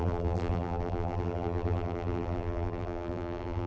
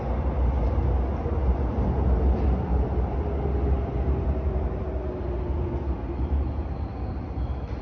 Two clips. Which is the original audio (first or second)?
second